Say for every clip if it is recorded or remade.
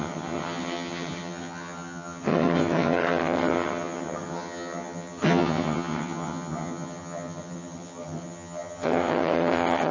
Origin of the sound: remade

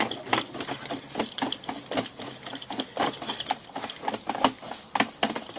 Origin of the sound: recorded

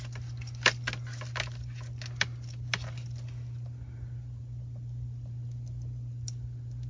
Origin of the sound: recorded